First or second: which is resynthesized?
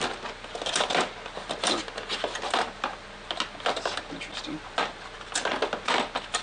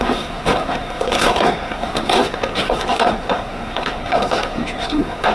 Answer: second